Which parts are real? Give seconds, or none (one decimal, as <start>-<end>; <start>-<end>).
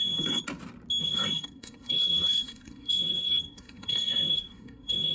0.4-1.0